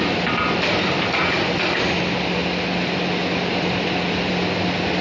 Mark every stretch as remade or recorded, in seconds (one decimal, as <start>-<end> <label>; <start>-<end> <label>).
0.0-5.0 recorded

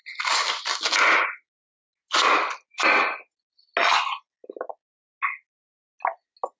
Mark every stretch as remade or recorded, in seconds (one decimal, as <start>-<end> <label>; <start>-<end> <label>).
0.0-6.6 recorded